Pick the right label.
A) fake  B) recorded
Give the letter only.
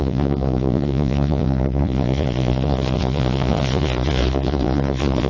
A